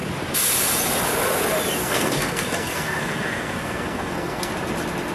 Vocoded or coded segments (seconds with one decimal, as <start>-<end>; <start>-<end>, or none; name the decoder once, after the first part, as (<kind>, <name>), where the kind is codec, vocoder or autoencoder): 1.8-4.5 (codec, SNAC)